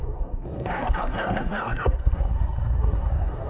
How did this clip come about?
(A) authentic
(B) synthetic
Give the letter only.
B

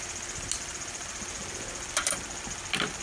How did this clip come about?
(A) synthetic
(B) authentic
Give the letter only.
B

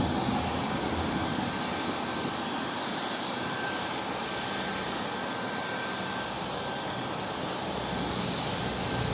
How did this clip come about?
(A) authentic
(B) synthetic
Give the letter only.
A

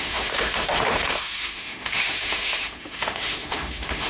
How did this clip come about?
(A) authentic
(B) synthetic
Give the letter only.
B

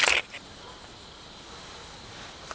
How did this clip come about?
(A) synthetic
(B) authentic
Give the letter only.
B